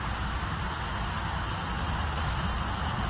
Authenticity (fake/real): real